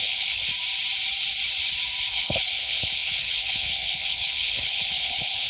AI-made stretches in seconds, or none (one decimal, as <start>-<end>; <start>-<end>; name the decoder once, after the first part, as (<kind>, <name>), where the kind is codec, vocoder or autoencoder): 0.0-0.5 (codec, HILCodec); 2.1-5.5